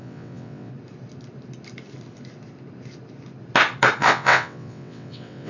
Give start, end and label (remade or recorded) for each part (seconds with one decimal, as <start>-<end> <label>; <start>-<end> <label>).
0.0-0.7 remade; 0.7-4.0 recorded; 4.0-5.5 remade